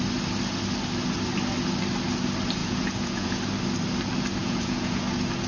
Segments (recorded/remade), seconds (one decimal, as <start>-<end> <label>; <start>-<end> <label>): 0.0-2.6 recorded; 2.6-3.4 remade; 3.4-4.4 recorded; 4.4-5.0 remade; 5.0-5.5 recorded